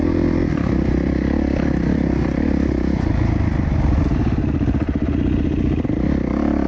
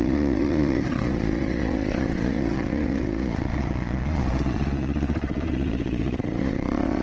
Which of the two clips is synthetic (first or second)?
second